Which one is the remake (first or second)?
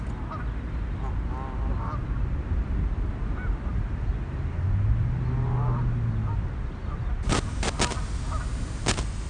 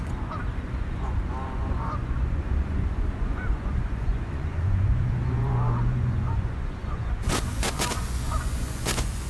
second